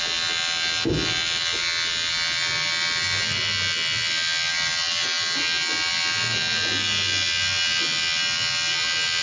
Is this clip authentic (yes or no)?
yes